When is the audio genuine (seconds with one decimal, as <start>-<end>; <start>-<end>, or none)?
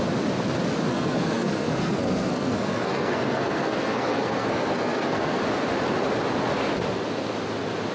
0.0-0.9; 5.4-7.9